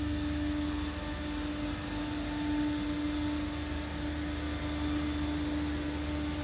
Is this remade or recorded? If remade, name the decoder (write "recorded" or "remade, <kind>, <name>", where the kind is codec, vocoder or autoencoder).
recorded